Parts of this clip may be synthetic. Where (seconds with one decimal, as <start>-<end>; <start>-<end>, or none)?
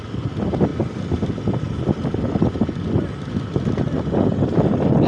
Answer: none